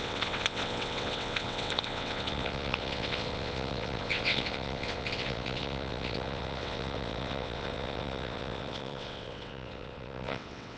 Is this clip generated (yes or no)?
yes